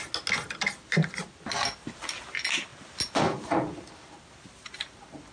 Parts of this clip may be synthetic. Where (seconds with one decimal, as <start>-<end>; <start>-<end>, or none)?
none